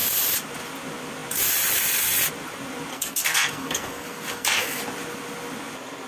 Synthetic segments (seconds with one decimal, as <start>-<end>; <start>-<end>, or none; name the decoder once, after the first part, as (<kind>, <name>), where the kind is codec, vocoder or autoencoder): 2.9-4.8 (codec, SNAC)

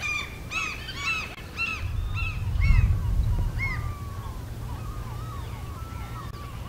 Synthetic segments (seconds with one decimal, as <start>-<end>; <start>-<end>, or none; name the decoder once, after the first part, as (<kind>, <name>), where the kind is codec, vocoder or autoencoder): none

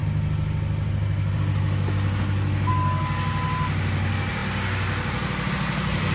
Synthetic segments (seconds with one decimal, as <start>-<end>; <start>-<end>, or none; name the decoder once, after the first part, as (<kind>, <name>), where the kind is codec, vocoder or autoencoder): none

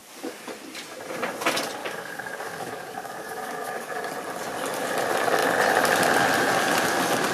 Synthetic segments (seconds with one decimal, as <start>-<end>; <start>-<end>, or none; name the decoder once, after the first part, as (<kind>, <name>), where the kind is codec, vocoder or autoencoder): 0.0-0.5 (codec, DAC); 1.8-4.1

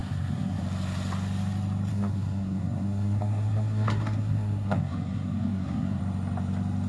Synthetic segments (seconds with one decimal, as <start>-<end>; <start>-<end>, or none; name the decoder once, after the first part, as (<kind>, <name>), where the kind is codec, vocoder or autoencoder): 0.0-0.6 (codec, SNAC); 1.9-6.0

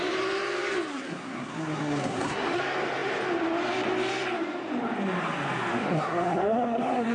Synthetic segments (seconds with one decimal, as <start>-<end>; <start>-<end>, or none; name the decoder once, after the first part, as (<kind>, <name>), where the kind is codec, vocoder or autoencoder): 0.9-2.6 (codec, SNAC); 5.8-7.1

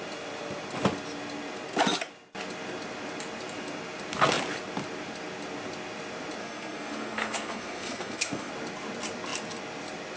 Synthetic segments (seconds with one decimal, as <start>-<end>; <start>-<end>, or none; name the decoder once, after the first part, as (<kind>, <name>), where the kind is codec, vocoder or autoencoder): 6.4-8.5 (codec, SNAC)